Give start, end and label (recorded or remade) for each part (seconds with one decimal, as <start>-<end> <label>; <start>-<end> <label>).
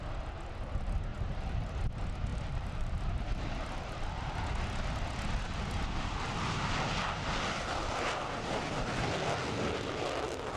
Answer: 0.0-1.1 recorded; 1.1-1.8 remade; 1.8-2.3 recorded; 2.3-4.3 remade; 4.3-10.6 recorded